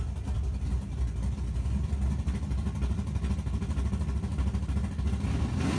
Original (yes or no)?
yes